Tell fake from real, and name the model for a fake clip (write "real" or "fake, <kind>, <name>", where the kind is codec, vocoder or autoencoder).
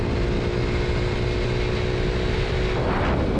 real